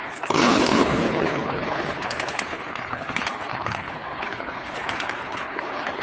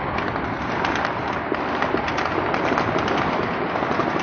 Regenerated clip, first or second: first